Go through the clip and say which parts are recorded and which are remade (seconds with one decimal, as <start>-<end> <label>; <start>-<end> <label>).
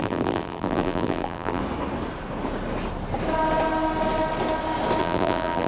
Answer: 0.0-1.6 remade; 1.6-5.0 recorded; 5.0-5.7 remade